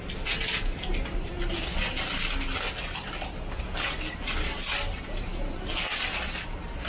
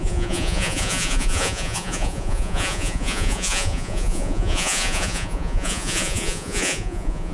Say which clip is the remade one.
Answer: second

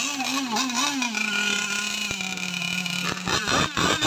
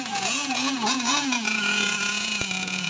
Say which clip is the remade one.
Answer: second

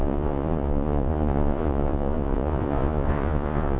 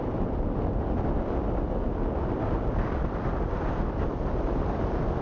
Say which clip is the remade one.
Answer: first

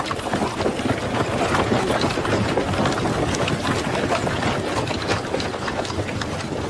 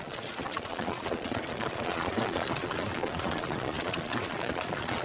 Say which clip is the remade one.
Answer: second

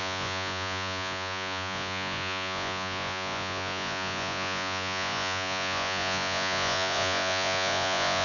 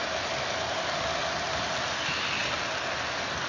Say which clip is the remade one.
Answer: first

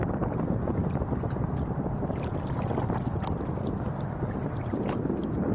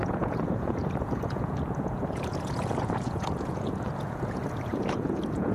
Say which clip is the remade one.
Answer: second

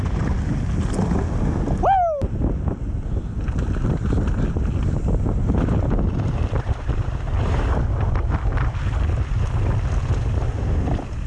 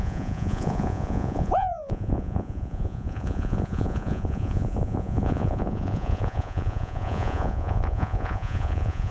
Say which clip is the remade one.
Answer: second